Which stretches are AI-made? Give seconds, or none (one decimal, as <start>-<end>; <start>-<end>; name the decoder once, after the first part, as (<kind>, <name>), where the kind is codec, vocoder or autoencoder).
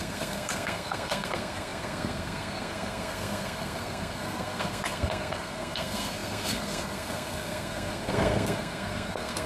0.0-9.5 (codec, SNAC)